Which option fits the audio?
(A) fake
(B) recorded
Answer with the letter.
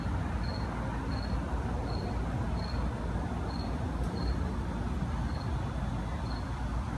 B